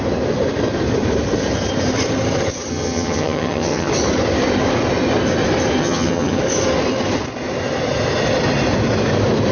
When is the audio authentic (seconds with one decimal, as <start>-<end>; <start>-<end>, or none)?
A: 0.0-2.7; 3.9-5.8; 6.4-9.5